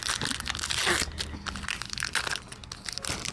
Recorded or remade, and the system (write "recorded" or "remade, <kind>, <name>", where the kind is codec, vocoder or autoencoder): recorded